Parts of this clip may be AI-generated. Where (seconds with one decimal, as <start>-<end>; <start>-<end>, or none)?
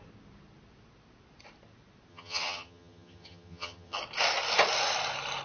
2.1-4.0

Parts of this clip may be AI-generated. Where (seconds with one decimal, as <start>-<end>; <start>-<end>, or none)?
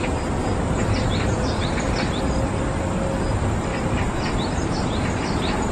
0.4-2.2; 3.7-5.7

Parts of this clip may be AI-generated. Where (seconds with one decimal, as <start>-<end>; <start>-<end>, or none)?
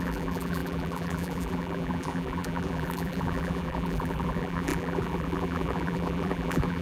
0.0-6.8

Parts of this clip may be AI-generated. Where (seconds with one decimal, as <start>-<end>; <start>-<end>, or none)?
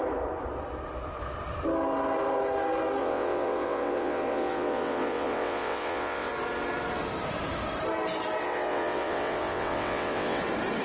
3.0-6.3; 8.4-10.4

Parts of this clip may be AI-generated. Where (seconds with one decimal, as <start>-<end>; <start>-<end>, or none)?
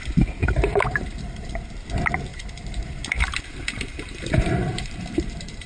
0.4-1.6; 2.3-5.7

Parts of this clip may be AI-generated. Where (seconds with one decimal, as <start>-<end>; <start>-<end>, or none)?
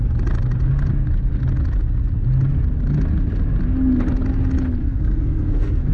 4.8-5.9